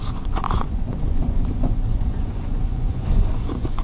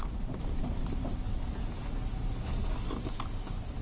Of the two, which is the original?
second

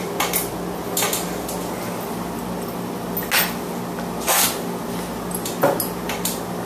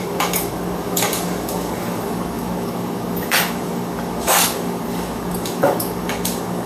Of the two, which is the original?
first